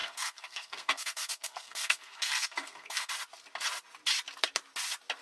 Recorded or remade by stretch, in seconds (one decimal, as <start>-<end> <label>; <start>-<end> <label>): 0.0-3.1 remade; 3.1-5.2 recorded